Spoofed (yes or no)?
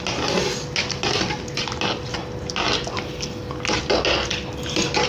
no